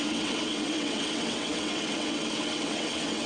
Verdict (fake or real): fake